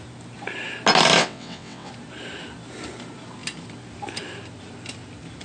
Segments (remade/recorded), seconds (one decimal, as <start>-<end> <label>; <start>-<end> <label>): 0.0-1.2 recorded; 1.2-1.9 remade; 1.9-5.4 recorded